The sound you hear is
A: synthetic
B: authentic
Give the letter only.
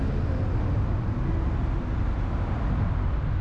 B